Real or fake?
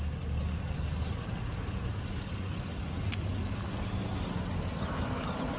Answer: real